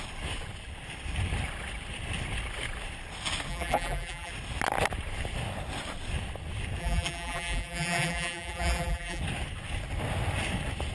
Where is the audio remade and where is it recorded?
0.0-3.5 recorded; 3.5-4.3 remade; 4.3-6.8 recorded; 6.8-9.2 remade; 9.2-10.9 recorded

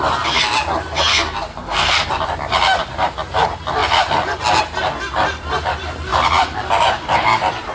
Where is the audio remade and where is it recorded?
0.0-1.5 recorded; 1.5-2.1 remade; 2.1-7.7 recorded

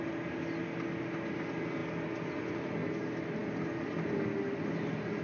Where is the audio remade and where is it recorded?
0.0-5.2 recorded

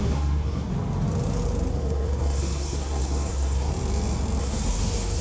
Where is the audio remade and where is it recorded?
0.0-0.7 remade; 0.7-1.7 recorded; 1.7-3.7 remade; 3.7-4.4 recorded; 4.4-5.2 remade

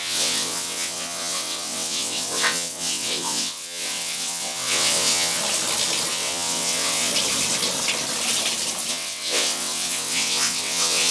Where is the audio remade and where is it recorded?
0.0-5.4 remade; 5.4-6.1 recorded; 6.1-7.1 remade; 7.1-8.9 recorded; 8.9-11.1 remade

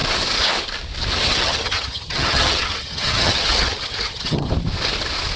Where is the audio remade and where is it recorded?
0.0-1.3 recorded; 1.3-4.5 remade; 4.5-5.4 recorded

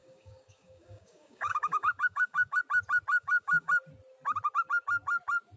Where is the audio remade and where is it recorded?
0.0-2.6 remade; 2.6-3.1 recorded; 3.1-3.7 remade; 3.7-5.6 recorded

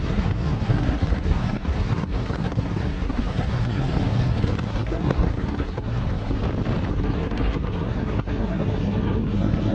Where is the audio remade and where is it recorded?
0.0-6.4 remade; 6.4-6.9 recorded; 6.9-9.7 remade